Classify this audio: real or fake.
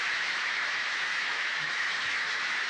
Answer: fake